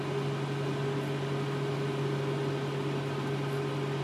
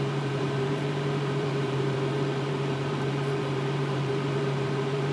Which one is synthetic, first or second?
second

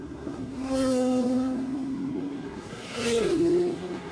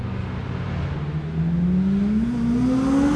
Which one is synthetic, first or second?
first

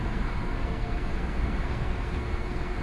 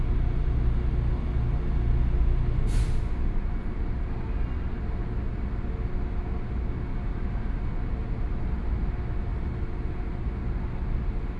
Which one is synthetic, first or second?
first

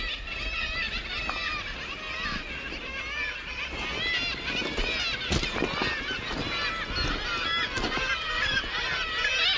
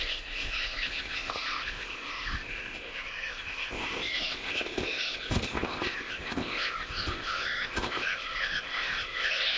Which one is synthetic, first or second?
second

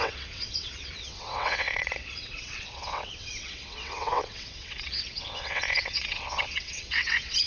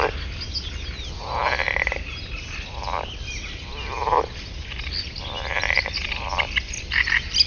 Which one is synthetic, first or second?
first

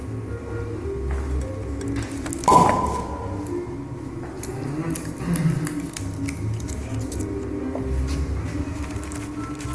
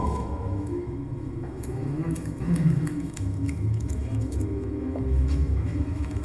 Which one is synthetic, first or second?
second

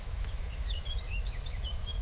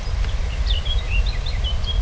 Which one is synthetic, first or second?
first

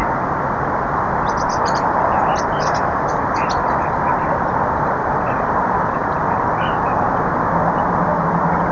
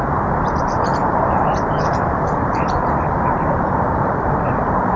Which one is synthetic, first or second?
second